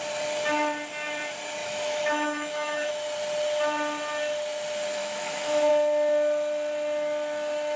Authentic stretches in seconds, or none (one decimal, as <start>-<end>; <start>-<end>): 0.0-1.6; 2.9-5.0; 5.7-7.8